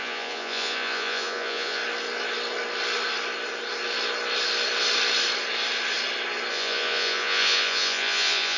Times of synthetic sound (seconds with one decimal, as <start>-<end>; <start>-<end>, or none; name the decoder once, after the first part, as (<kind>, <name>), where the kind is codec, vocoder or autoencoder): 0.0-1.8 (vocoder, Vocos); 6.5-8.6

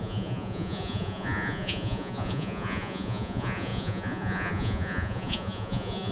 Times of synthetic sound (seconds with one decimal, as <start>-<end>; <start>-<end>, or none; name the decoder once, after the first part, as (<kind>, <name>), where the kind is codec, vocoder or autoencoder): 0.0-6.1 (vocoder, Vocos)

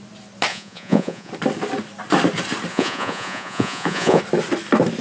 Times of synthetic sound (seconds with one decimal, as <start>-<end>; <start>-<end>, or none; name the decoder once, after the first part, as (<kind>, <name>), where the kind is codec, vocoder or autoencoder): 0.5-1.3 (vocoder, Vocos); 2.7-4.2

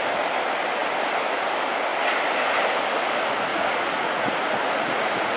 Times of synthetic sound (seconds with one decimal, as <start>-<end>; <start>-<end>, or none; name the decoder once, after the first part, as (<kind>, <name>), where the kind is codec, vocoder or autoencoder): 3.5-5.4 (vocoder, Vocos)

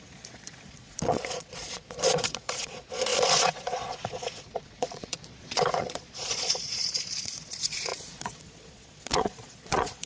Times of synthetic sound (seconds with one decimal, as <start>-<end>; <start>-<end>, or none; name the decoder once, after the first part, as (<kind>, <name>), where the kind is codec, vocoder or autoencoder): 0.0-10.1 (vocoder, Vocos)

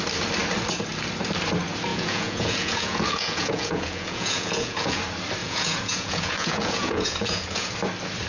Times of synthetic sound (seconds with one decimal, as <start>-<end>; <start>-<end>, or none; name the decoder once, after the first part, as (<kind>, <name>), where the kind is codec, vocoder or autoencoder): 1.9-5.0 (vocoder, Vocos); 5.4-7.7

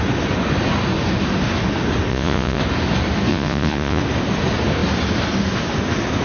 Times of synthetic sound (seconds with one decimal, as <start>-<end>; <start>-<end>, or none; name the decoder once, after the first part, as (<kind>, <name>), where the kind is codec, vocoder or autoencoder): 2.1-2.6 (vocoder, Vocos); 3.3-4.0